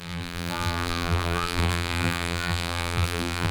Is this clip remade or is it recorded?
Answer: remade